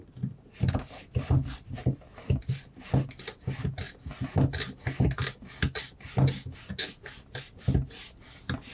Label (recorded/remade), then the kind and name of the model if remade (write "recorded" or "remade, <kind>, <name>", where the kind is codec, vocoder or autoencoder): recorded